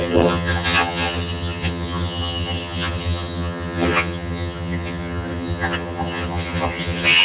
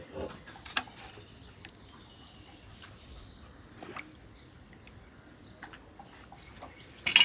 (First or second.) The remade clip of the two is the first